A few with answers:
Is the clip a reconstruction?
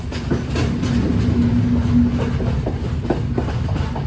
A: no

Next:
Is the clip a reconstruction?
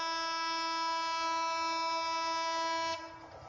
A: no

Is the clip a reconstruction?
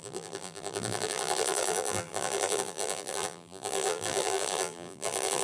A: yes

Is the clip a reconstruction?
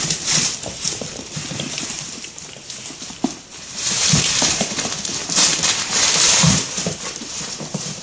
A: yes